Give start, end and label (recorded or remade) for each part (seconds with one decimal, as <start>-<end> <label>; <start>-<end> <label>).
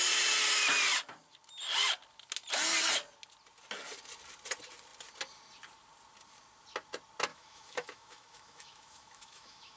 0.0-7.3 recorded; 7.3-9.8 remade